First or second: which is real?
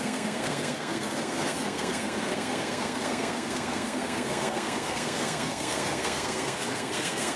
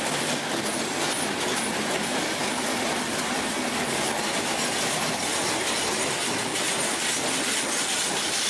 second